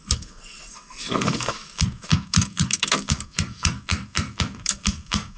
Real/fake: fake